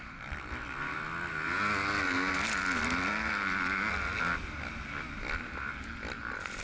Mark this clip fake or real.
real